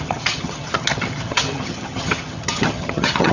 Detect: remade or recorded remade